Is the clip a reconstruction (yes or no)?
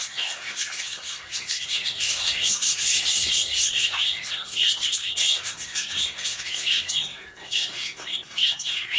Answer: yes